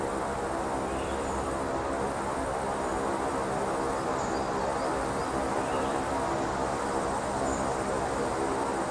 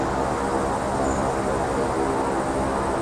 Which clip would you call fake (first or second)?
first